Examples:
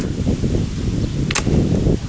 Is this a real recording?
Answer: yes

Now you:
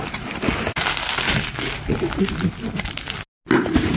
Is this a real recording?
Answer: yes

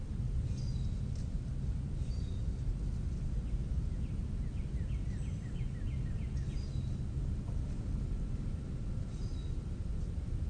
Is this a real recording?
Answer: yes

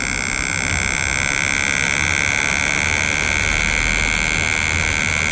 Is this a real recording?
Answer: yes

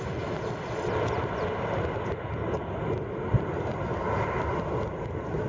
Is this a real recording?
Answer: yes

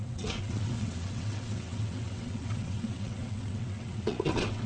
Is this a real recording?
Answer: no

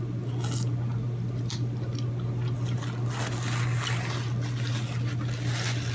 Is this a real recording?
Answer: yes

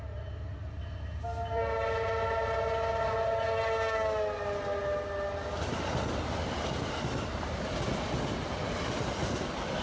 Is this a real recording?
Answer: yes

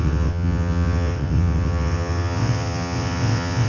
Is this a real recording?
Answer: no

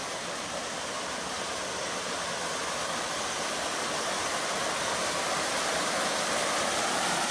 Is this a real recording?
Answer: yes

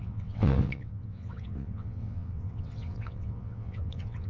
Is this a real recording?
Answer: no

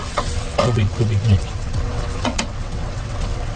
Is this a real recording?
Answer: no